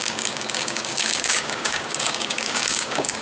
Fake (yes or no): yes